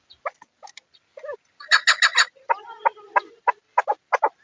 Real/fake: real